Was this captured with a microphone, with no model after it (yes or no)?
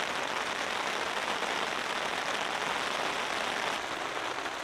yes